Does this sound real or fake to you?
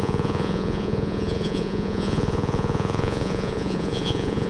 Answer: fake